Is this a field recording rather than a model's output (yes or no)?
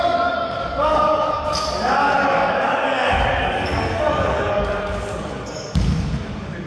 no